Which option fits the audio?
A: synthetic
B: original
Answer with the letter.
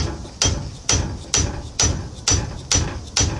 B